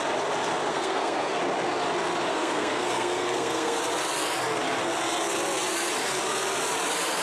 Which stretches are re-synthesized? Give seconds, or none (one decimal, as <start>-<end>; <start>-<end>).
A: 0.7-1.4; 2.3-3.8